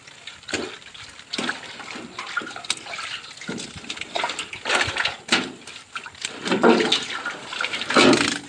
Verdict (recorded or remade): recorded